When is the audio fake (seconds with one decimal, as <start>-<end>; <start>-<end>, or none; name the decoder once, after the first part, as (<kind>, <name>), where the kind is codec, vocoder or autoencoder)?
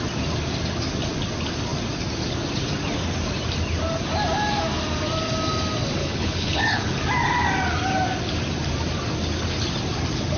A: 6.0-6.9 (codec, HILCodec)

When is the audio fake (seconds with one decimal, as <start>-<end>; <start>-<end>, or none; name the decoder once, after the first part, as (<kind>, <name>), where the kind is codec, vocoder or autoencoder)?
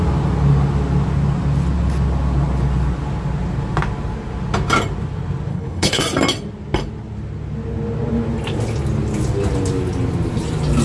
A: 5.5-6.0 (codec, HILCodec)